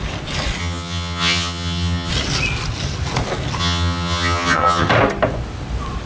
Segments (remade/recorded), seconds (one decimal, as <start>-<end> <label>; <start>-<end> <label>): 0.0-0.6 recorded; 0.6-2.1 remade; 2.1-3.6 recorded; 3.6-4.9 remade; 4.9-6.1 recorded